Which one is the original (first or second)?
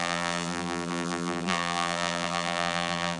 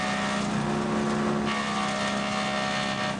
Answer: second